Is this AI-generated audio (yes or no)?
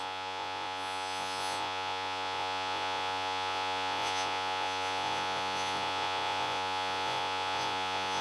yes